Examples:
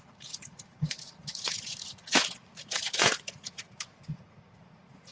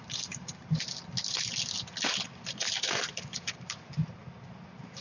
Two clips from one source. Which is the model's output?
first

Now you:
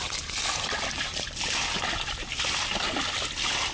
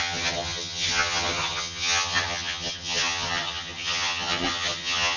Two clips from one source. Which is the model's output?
second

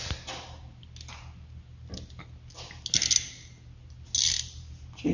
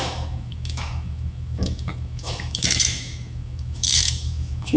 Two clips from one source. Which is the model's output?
second